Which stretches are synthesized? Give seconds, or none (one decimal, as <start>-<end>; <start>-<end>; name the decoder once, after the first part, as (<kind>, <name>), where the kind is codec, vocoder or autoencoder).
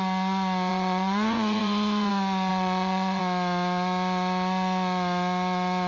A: 0.7-2.1 (vocoder, Vocos); 2.5-3.2